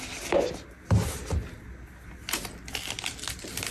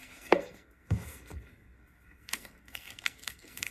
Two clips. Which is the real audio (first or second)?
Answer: first